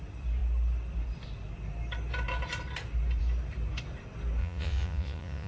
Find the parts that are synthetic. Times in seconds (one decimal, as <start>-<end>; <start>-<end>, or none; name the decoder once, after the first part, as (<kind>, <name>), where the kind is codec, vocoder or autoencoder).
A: 4.4-5.5 (vocoder, Vocos)